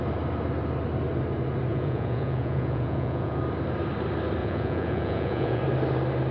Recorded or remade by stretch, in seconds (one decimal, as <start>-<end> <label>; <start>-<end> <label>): 0.0-1.7 recorded; 1.7-3.4 remade; 3.4-4.4 recorded; 4.4-5.6 remade; 5.6-6.3 recorded

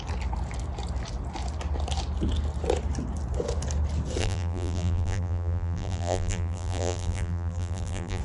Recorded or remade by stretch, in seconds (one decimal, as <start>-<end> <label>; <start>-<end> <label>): 0.0-4.2 recorded; 4.2-8.2 remade

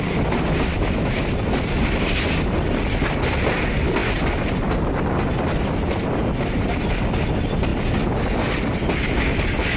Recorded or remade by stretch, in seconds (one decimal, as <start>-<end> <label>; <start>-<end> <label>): 0.0-0.7 recorded; 0.7-1.2 remade; 1.2-9.8 recorded

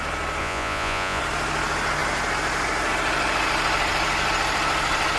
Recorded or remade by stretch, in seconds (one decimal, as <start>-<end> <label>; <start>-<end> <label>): 0.0-0.4 recorded; 0.4-1.2 remade; 1.2-5.2 recorded

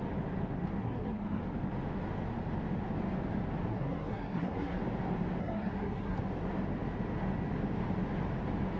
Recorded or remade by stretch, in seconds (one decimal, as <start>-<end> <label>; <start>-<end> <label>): 0.0-0.8 recorded; 0.8-1.4 remade; 1.4-3.7 recorded; 3.7-4.8 remade; 4.8-5.4 recorded; 5.4-6.2 remade; 6.2-8.8 recorded

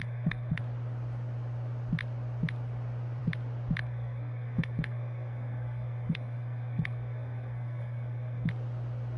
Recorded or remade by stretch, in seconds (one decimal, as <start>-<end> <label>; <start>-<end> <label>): 0.0-0.6 remade; 0.6-3.8 recorded; 3.8-8.5 remade; 8.5-9.2 recorded